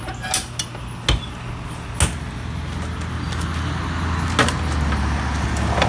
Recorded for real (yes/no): yes